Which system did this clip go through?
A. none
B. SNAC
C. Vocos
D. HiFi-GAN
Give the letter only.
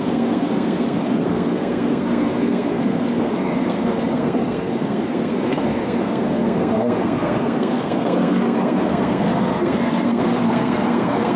B